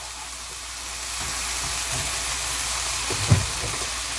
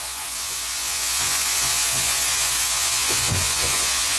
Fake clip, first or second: second